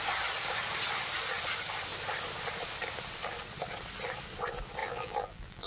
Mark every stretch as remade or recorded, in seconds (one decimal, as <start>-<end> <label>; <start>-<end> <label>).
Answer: 0.0-4.8 recorded; 4.8-5.7 remade

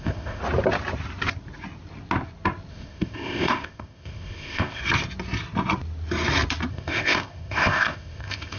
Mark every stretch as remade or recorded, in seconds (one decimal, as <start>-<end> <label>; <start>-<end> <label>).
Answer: 0.0-0.4 remade; 0.4-2.7 recorded; 2.7-4.8 remade; 4.8-6.7 recorded; 6.7-8.6 remade